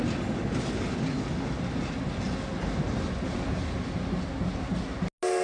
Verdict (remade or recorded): recorded